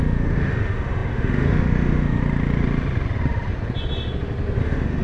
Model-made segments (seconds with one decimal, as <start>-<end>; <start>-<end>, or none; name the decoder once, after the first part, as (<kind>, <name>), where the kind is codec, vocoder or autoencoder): 0.0-2.2 (autoencoder, DAC-VAE); 4.6-5.0